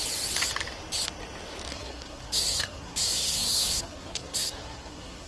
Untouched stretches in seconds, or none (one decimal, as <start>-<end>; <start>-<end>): 0.0-1.7